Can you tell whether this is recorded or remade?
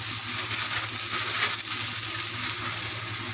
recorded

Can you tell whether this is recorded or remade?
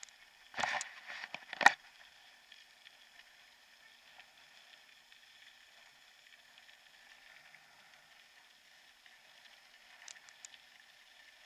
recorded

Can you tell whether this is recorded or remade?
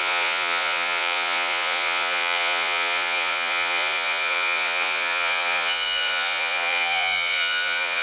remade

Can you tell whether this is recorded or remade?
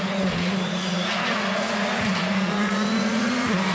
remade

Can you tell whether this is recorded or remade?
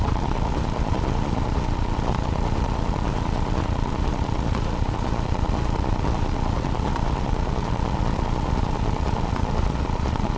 remade